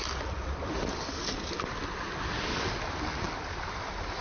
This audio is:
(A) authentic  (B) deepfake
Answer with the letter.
A